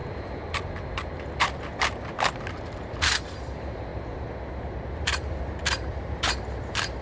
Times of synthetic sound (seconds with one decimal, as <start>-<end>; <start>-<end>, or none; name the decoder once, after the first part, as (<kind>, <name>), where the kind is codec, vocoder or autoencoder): 2.9-3.9 (vocoder, BigVGAN v2); 4.9-7.0